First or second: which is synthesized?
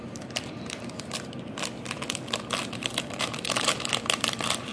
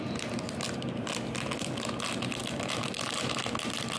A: first